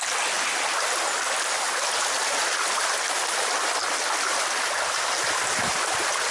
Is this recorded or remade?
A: recorded